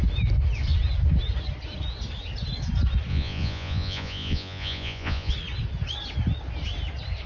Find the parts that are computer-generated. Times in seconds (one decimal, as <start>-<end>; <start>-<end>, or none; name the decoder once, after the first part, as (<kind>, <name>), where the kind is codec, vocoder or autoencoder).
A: 3.1-5.3 (vocoder, Vocos)